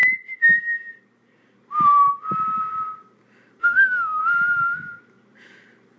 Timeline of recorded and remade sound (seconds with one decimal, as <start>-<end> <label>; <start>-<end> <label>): 0.0-3.6 recorded; 3.6-4.2 remade; 4.2-6.0 recorded